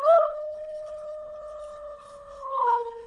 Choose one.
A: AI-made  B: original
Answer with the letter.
A